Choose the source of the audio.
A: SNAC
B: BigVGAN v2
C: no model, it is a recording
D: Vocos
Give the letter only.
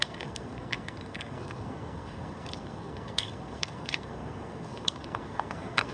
A